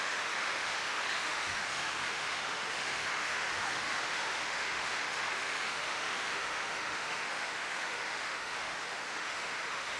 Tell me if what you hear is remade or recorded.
remade